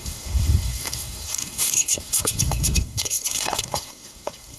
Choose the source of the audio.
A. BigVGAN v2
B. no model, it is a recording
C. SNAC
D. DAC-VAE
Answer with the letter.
C